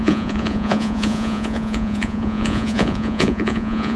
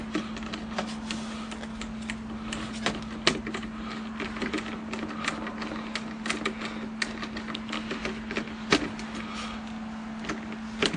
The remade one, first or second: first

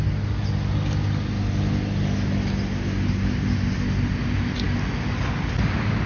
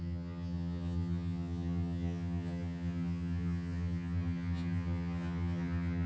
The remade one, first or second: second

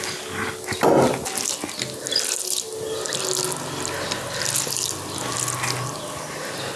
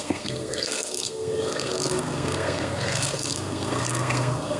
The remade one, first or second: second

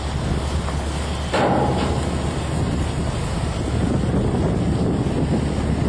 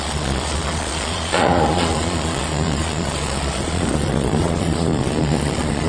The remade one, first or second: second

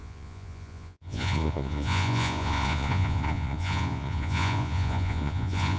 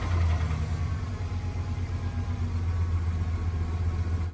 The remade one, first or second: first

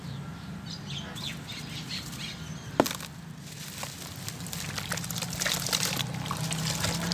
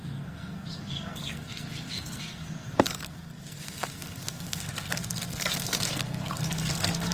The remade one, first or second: second